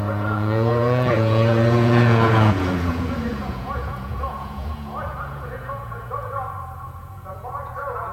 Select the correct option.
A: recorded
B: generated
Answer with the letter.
B